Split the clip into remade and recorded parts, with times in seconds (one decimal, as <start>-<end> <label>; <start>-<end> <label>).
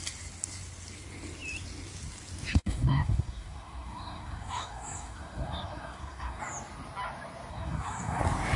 0.0-2.5 recorded; 2.5-6.4 remade; 6.4-7.5 recorded; 7.5-8.2 remade; 8.2-8.6 recorded